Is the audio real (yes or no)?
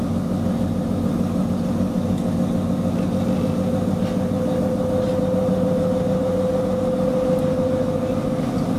yes